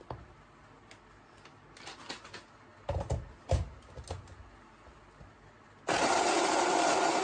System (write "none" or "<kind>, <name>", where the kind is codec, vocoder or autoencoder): none